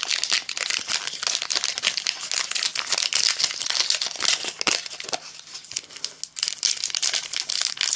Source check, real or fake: real